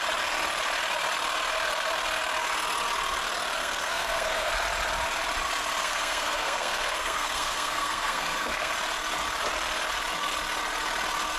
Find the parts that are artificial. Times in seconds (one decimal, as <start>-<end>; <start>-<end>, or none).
3.6-4.5; 5.8-8.7